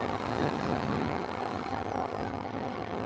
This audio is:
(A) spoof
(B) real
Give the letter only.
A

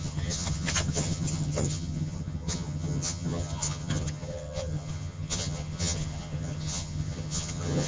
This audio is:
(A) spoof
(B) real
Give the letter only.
A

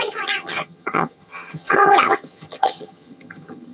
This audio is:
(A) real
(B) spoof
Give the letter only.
B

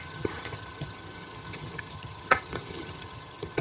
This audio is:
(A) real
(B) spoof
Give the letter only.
B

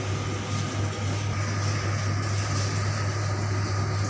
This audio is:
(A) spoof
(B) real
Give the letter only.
B